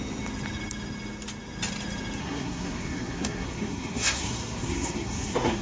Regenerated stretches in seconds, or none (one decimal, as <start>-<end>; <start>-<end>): 2.2-5.6